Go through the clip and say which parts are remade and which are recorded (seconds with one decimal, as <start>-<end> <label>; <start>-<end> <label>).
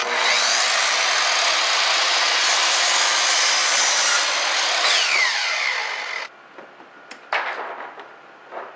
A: 0.0-8.8 recorded